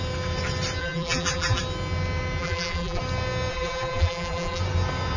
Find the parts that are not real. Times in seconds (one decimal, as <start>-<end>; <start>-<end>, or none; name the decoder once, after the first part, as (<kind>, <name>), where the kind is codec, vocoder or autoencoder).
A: 0.8-1.6 (vocoder, BigVGAN v2); 2.4-3.0; 3.5-4.6